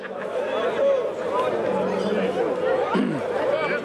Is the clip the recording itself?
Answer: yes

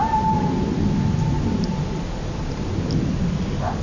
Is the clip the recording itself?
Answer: yes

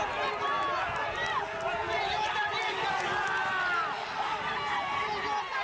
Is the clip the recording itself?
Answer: yes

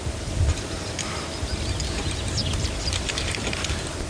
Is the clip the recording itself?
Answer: yes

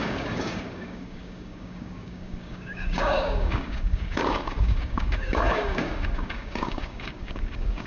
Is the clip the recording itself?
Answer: no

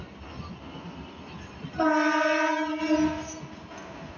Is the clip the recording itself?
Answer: yes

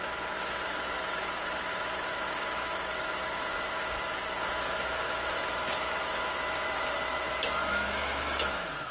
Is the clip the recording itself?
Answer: no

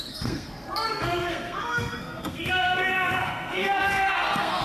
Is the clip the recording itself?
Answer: no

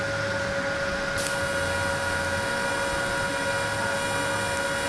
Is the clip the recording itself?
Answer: yes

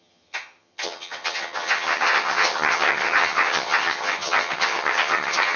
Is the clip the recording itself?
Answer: no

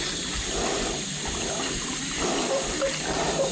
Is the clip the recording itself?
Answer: yes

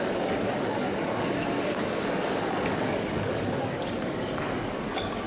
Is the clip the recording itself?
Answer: no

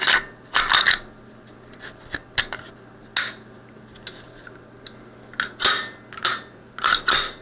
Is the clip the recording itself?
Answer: yes